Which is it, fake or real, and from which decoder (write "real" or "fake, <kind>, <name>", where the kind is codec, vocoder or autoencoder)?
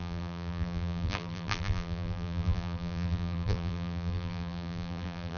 fake, vocoder, BigVGAN v2